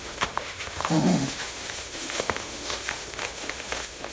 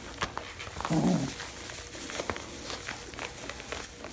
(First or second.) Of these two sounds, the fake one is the first